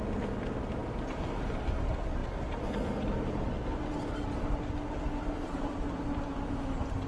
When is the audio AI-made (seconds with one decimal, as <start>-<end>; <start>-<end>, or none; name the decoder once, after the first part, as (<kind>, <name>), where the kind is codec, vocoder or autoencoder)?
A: none